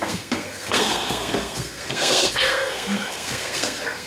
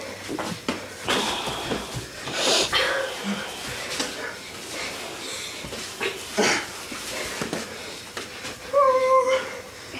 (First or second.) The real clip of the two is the second